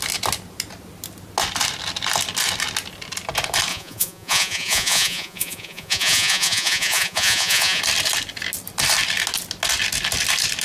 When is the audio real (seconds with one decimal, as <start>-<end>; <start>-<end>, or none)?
0.0-3.7; 7.8-10.6